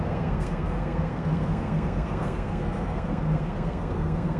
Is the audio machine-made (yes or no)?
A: yes